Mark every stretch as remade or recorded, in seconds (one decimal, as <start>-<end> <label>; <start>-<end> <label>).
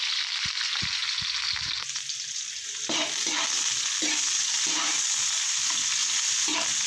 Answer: 0.0-6.9 recorded